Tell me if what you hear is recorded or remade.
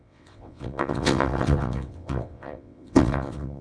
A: remade